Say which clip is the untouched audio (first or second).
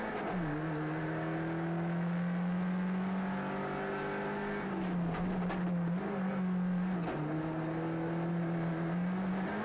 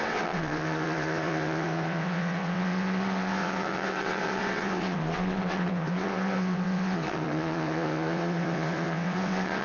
first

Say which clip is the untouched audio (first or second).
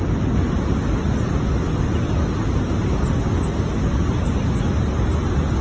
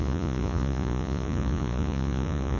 first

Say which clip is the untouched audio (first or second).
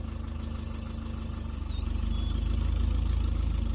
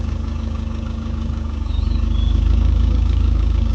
first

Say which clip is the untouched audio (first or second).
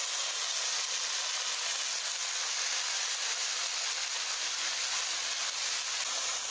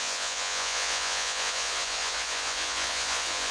first